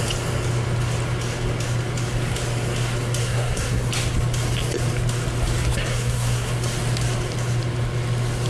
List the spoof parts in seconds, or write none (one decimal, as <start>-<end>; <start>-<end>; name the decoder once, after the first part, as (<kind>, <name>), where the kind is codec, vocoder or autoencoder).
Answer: 3.2-3.9 (codec, SNAC); 5.9-6.5